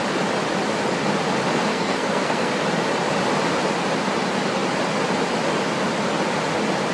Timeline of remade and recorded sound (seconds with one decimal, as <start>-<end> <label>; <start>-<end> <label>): 0.0-1.7 recorded; 1.7-2.5 remade; 2.5-6.9 recorded